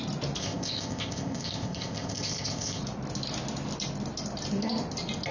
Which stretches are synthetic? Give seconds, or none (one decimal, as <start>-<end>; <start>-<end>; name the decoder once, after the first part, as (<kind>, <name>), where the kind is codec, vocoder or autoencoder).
0.4-2.8 (codec, ZipCodec)